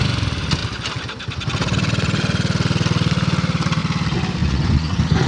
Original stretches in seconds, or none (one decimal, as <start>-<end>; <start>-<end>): 0.0-4.4